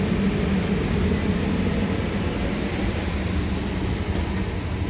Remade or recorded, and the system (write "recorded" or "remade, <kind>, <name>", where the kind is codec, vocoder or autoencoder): recorded